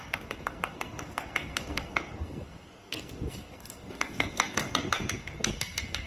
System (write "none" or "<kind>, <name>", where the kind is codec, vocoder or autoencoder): codec, SNAC